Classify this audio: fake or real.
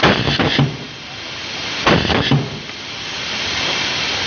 real